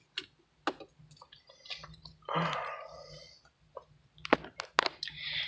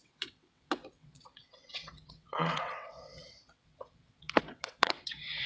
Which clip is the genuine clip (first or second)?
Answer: first